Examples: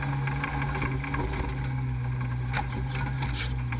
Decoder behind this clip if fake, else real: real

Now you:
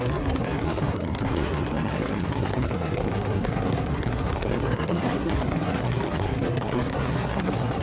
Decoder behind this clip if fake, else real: fake, codec, SNAC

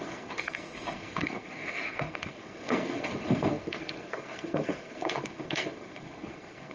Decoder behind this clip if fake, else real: fake, codec, SNAC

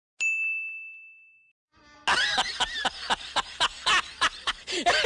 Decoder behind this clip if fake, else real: real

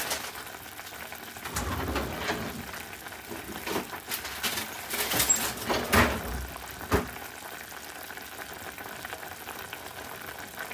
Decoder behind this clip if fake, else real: real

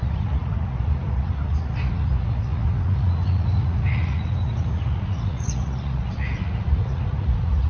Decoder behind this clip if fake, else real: fake, vocoder, Vocos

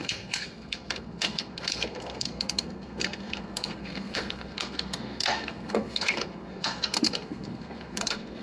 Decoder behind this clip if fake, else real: fake, codec, SNAC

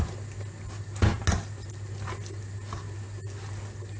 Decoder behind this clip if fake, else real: real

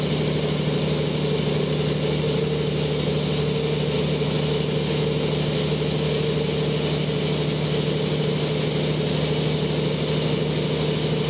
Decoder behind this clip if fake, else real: real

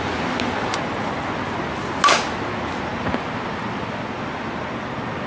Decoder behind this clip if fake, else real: real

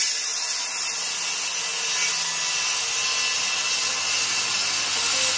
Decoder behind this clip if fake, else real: real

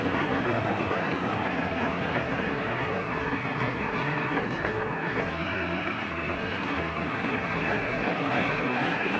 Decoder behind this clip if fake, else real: fake, codec, SNAC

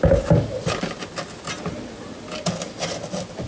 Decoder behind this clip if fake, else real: real